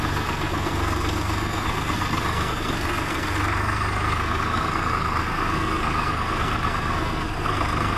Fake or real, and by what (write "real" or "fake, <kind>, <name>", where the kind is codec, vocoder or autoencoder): fake, codec, SNAC